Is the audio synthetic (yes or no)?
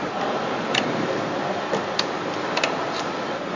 no